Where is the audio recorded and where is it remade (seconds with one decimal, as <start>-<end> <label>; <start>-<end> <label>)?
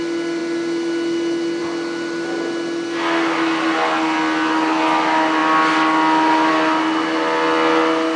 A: 0.0-8.2 recorded